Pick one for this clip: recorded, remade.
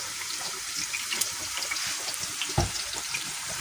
remade